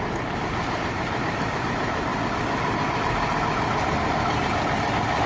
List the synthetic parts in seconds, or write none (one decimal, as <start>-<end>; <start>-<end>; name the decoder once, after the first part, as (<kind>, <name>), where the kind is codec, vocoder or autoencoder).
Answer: 0.0-2.1 (vocoder, BigVGAN v2)